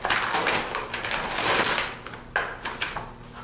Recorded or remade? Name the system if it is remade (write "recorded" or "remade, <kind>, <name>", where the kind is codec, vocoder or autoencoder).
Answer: recorded